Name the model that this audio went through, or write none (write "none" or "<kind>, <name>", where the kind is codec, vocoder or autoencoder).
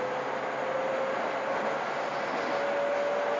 none